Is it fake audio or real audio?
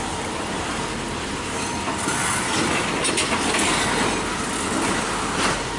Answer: real